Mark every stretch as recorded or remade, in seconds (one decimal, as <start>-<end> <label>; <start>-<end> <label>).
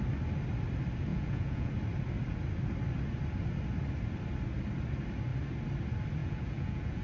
0.0-1.1 recorded; 1.1-1.7 remade; 1.7-6.2 recorded; 6.2-7.0 remade